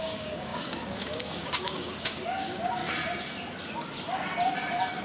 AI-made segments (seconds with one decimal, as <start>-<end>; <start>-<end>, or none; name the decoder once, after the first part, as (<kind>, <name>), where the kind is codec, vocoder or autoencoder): 0.0-2.8 (codec, DAC)